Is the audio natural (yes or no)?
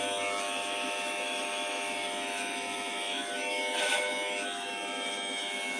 no